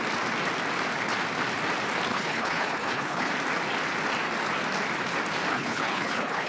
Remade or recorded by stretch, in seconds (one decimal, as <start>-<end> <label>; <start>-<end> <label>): 0.0-2.1 recorded; 2.1-3.3 remade; 3.3-5.5 recorded; 5.5-6.5 remade